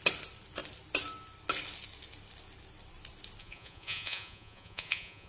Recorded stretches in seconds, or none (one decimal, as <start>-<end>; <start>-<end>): 0.0-3.4